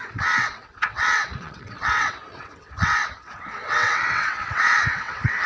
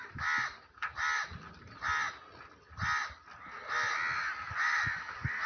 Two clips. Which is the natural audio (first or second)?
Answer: second